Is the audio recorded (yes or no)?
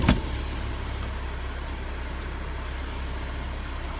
yes